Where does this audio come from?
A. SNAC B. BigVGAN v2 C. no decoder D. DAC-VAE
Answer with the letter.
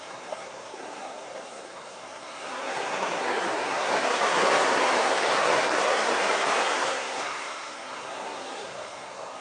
A